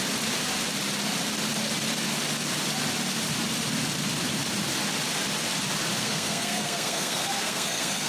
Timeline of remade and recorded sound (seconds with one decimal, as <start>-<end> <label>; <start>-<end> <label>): 0.0-6.0 recorded; 6.0-8.1 remade